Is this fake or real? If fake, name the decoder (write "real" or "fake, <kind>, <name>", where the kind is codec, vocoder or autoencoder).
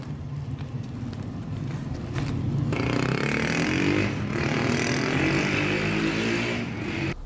real